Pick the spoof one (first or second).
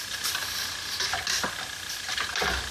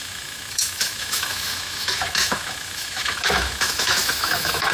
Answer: second